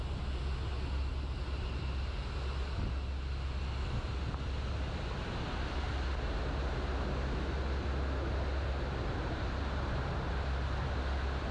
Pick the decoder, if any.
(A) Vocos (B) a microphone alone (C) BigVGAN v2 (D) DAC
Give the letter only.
B